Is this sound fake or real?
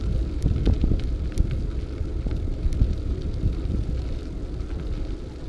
real